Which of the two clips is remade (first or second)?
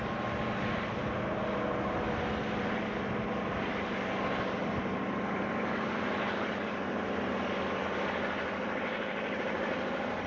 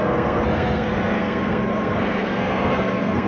second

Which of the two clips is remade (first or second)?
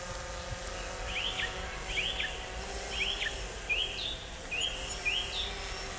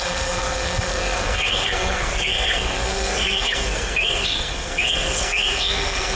second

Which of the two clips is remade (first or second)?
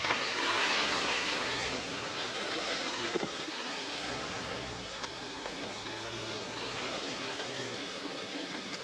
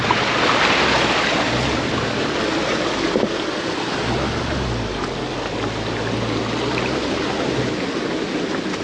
first